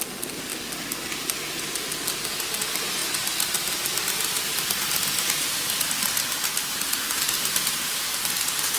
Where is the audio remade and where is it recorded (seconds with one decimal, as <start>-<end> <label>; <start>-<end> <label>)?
0.0-8.8 recorded